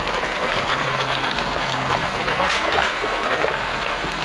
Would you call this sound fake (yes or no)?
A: yes